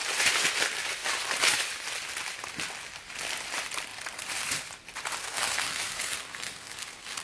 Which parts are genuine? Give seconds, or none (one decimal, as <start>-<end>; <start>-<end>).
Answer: 0.0-5.2